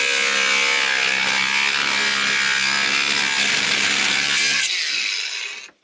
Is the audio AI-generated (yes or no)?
no